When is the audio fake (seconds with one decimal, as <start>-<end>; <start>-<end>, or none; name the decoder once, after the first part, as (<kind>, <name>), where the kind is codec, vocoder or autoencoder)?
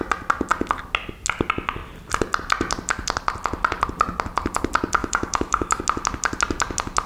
5.0-5.8 (autoencoder, DAC-VAE)